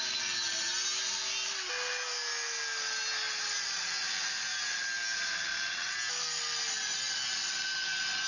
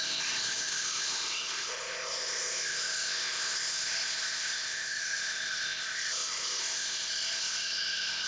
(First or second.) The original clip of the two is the first